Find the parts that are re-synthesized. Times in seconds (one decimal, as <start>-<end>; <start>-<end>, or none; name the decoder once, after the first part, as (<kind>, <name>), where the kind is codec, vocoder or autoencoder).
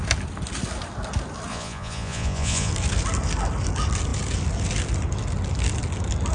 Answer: 1.5-2.7 (vocoder, Vocos)